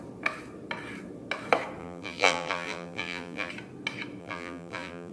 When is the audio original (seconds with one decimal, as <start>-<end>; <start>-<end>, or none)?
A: 0.0-1.8; 3.5-4.2